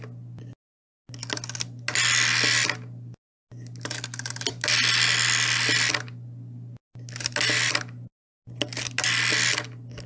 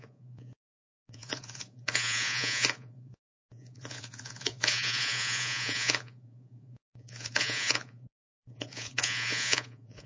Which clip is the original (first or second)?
first